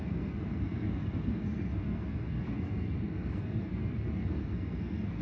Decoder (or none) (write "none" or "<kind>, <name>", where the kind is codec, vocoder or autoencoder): codec, SNAC